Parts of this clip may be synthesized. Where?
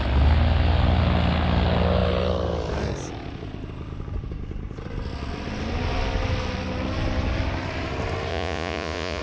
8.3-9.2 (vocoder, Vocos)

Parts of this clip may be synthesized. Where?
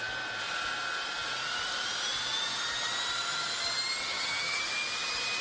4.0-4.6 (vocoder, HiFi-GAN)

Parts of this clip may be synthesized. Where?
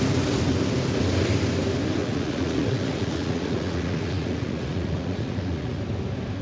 2.0-5.8 (vocoder, Vocos)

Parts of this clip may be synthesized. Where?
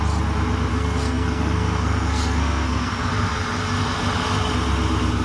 0.7-3.1 (codec, SNAC)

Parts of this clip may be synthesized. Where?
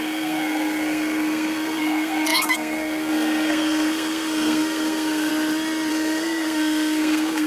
0.0-5.3 (codec, SNAC); 5.9-7.5